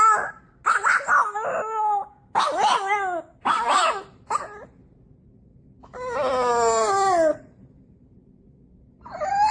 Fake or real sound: real